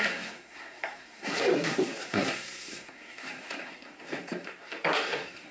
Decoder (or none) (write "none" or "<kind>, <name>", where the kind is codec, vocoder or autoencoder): codec, SNAC